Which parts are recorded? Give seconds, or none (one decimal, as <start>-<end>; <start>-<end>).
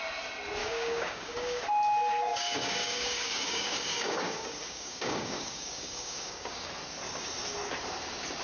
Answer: 0.0-0.6; 1.6-2.3; 6.7-8.4